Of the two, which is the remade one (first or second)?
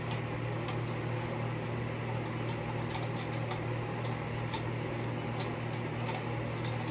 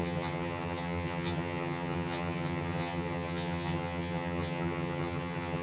second